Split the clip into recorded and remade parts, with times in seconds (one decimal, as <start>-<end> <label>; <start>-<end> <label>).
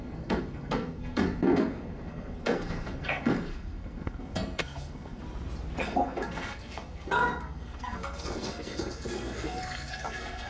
0.0-5.2 remade; 5.2-5.8 recorded; 5.8-10.5 remade